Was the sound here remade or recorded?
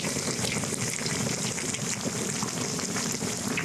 recorded